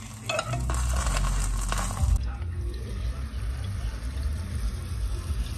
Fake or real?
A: real